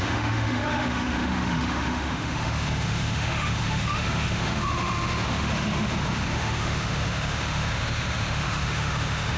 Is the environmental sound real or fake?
fake